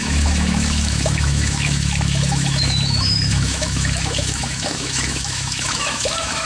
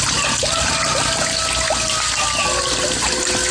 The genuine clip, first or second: second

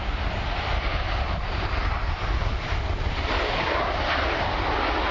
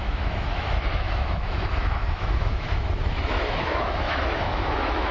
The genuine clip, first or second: first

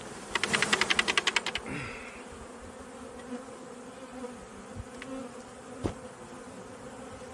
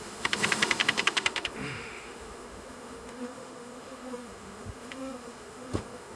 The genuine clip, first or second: first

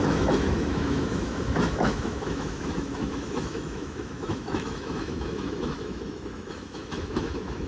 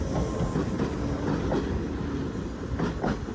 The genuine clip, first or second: second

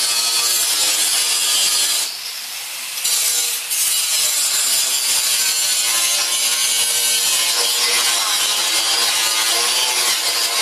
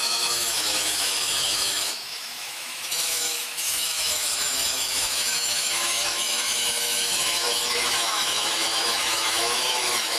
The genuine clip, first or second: first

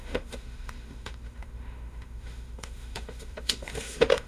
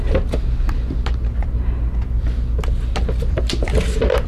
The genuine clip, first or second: second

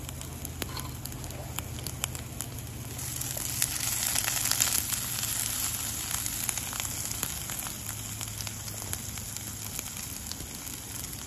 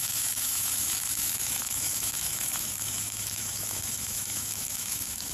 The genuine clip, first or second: first